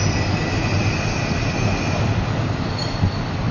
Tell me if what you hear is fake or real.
real